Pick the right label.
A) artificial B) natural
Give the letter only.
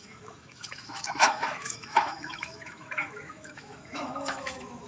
A